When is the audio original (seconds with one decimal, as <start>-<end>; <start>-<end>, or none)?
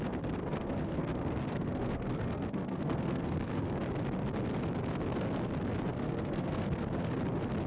0.0-0.4; 3.7-5.9; 7.2-7.7